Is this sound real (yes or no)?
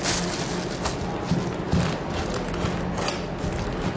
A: yes